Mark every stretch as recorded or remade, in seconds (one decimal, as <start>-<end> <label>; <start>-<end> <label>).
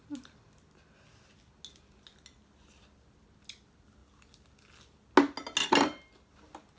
0.0-6.8 recorded